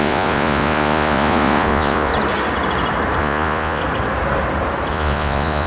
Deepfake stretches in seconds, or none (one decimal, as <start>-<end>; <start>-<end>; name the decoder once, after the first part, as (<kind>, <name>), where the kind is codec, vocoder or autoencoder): 0.0-2.1 (vocoder, Vocos); 3.2-3.8; 4.9-5.7